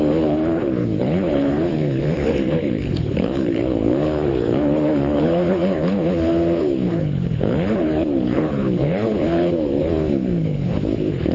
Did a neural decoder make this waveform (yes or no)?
yes